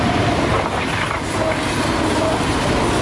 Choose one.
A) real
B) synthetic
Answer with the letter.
A